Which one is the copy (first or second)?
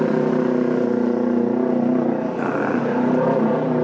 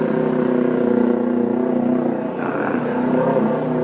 first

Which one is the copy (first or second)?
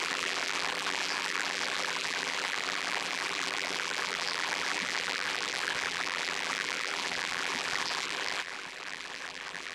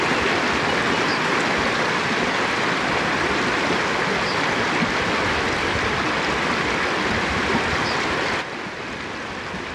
first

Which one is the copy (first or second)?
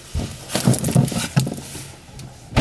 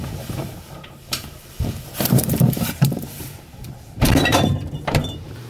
second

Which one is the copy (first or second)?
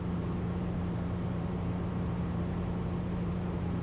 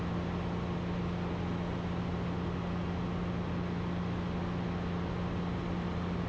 first